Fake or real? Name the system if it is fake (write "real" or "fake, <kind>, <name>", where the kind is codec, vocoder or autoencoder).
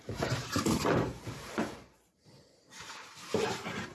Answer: fake, vocoder, BigVGAN v2